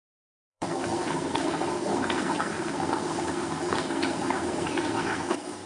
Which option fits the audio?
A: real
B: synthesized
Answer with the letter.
B